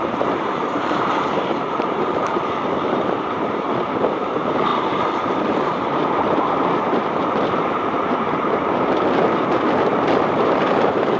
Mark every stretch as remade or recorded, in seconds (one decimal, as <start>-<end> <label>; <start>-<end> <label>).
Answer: 0.0-11.2 remade